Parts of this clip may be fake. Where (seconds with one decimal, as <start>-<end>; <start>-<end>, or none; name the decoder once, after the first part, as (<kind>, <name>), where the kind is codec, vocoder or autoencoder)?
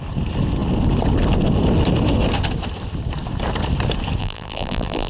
4.2-5.1 (vocoder, BigVGAN v2)